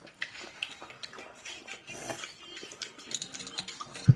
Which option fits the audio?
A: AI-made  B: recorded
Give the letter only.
B